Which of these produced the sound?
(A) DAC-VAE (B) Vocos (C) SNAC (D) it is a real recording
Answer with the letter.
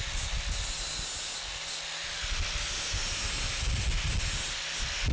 D